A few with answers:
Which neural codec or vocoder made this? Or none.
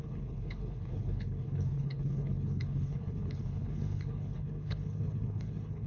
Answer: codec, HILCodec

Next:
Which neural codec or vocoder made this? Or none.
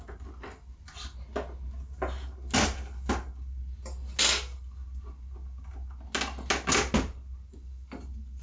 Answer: none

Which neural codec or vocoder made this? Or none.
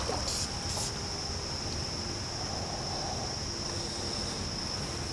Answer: none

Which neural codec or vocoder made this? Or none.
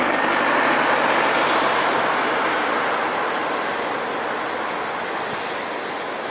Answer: none